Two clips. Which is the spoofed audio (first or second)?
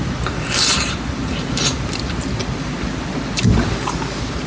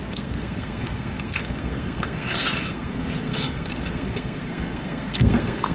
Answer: second